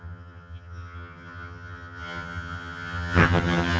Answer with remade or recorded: remade